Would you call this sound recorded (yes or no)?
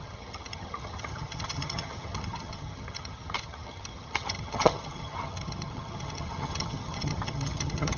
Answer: no